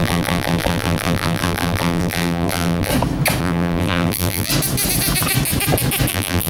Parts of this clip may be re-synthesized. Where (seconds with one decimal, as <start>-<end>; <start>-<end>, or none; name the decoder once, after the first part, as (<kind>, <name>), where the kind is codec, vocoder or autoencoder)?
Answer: 0.0-2.9 (vocoder, BigVGAN v2); 3.4-4.5; 6.1-6.5